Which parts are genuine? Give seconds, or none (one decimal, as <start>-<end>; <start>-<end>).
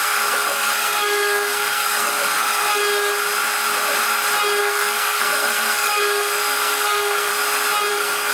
2.8-4.6; 7.3-7.9